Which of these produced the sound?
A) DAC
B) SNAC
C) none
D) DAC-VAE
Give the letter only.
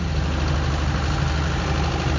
C